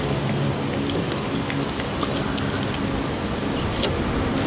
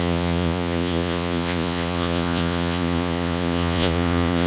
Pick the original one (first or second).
first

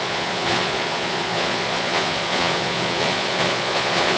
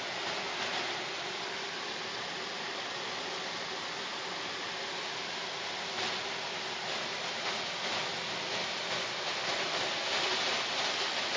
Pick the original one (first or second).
second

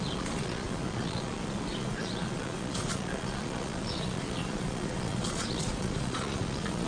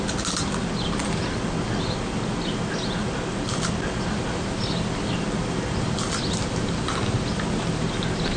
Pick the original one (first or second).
second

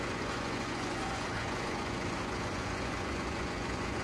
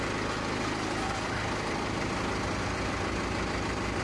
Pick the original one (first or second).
second